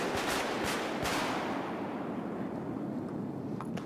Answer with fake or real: real